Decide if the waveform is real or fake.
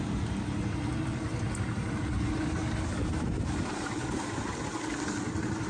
real